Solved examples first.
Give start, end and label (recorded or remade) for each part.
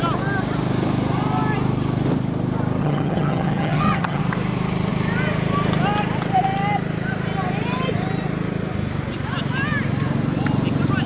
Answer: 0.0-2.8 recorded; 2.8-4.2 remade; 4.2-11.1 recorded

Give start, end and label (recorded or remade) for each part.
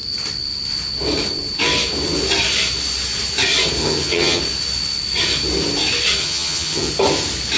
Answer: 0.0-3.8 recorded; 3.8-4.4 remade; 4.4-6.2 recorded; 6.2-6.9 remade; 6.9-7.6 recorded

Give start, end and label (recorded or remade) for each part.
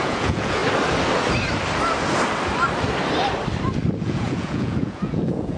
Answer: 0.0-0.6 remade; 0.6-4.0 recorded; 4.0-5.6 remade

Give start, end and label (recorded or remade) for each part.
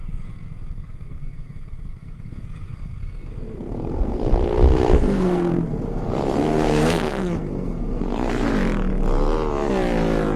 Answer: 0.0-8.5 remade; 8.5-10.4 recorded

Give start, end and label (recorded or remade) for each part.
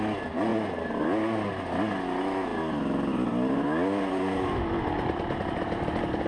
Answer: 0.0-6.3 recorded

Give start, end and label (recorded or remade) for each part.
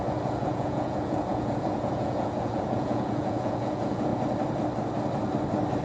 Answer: 0.0-4.1 remade; 4.1-5.8 recorded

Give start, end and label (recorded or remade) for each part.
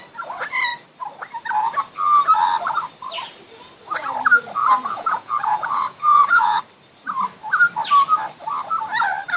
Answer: 0.0-4.6 recorded; 4.6-6.6 remade; 6.6-9.4 recorded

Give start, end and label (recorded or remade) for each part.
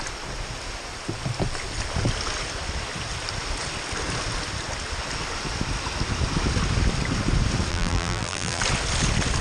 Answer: 0.0-7.7 recorded; 7.7-8.6 remade; 8.6-9.4 recorded